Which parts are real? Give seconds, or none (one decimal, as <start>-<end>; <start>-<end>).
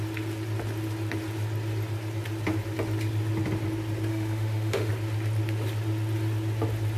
0.0-4.1; 4.9-7.0